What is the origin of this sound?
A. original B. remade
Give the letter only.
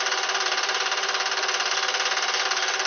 A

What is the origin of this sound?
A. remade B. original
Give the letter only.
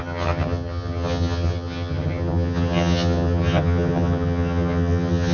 A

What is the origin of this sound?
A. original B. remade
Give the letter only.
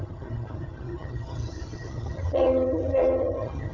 B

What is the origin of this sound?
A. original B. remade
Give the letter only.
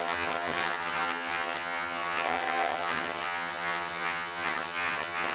B